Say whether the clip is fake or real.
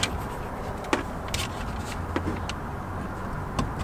real